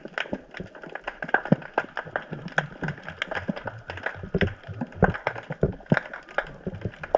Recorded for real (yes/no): yes